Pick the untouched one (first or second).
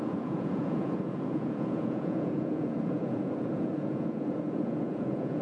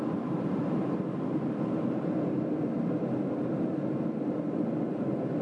second